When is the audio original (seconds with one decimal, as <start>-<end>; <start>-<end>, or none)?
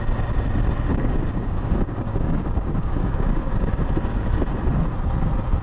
0.0-0.9; 3.7-5.6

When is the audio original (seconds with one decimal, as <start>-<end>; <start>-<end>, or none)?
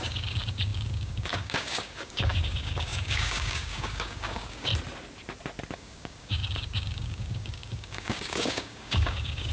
4.7-5.7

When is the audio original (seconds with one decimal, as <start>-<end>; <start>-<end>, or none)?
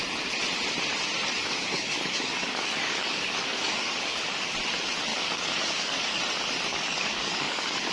0.0-1.4; 4.5-5.1; 6.2-6.7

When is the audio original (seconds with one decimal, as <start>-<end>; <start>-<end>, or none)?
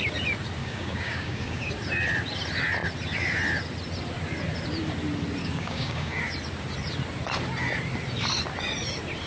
0.0-0.6; 1.7-5.4; 6.2-9.3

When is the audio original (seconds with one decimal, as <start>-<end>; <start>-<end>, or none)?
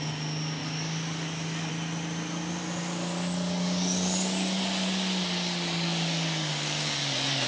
0.0-0.6; 1.7-2.8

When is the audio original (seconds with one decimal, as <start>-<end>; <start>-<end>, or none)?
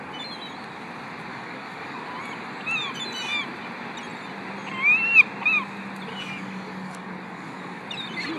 0.0-1.3; 2.1-6.1; 7.8-8.4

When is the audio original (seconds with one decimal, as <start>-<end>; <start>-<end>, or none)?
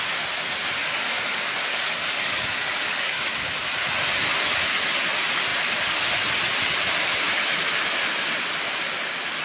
0.0-0.8; 3.3-9.4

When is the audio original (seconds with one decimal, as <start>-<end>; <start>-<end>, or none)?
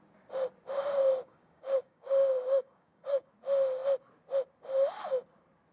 0.0-1.0; 3.3-5.7